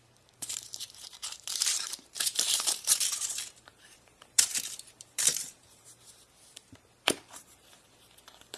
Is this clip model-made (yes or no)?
yes